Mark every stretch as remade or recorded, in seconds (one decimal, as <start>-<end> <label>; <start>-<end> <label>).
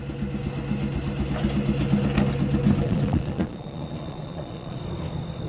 0.0-2.8 recorded; 2.8-4.8 remade; 4.8-5.5 recorded